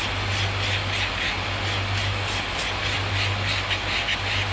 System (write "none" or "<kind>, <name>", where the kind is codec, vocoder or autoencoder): none